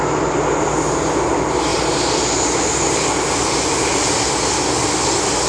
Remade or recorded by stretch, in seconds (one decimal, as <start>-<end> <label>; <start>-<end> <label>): 0.0-5.5 recorded